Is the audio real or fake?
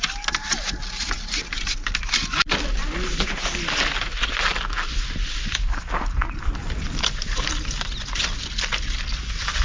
real